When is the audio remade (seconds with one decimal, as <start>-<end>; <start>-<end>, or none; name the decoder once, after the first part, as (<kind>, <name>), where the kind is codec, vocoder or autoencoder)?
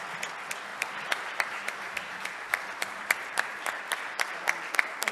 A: 0.7-3.8 (vocoder, BigVGAN v2)